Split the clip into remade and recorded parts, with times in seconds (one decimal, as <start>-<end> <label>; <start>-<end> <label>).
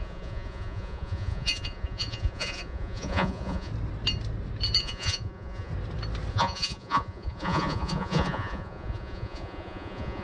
0.0-3.7 remade; 3.7-4.8 recorded; 4.8-5.7 remade; 5.7-6.3 recorded; 6.3-10.2 remade